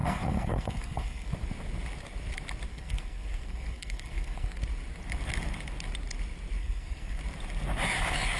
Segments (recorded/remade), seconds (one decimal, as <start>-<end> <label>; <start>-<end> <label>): 0.0-1.3 remade; 1.3-2.7 recorded; 2.7-4.6 remade; 4.6-6.6 recorded; 6.6-7.2 remade; 7.2-8.4 recorded